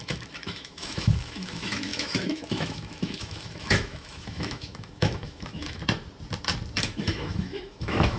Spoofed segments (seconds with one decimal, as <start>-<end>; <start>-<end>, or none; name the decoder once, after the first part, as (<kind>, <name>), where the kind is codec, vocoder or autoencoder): 0.0-5.8 (autoencoder, DAC-VAE); 6.8-8.2